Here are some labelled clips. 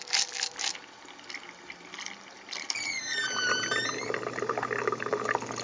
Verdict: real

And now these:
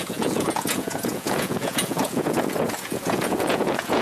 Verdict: fake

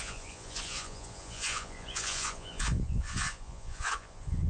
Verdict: fake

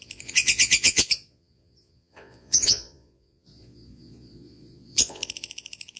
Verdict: fake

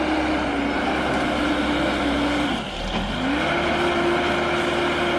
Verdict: real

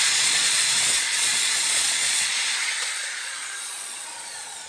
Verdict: fake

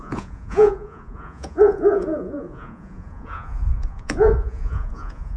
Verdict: fake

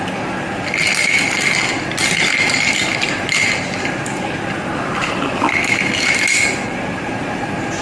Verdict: real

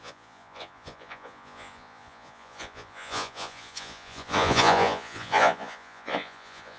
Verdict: fake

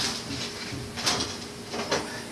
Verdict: real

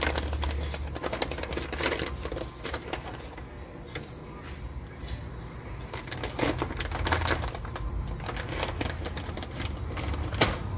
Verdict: real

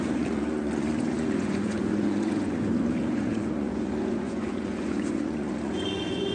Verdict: fake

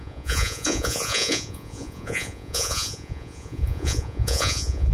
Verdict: fake